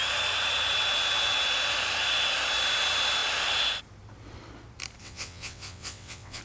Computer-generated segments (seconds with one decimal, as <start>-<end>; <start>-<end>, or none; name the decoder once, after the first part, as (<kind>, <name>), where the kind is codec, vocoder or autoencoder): 5.0-6.4 (vocoder, WaveNeXt)